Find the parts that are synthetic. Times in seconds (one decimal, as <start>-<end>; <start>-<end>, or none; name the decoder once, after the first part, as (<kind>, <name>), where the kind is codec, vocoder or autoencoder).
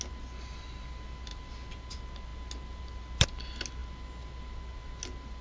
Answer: none